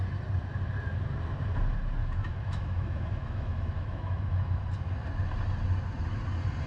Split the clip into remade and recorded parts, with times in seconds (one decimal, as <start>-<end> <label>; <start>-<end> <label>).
0.0-2.0 recorded; 2.0-4.6 remade; 4.6-6.7 recorded

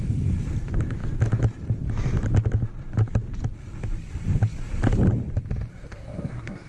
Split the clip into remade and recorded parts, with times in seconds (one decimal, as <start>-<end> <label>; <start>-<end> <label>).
0.0-5.7 recorded; 5.7-6.7 remade